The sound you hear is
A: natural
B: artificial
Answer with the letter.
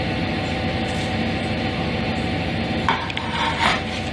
B